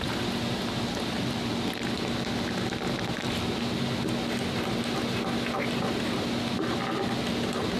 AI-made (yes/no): no